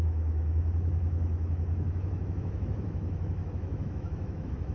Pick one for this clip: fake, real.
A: fake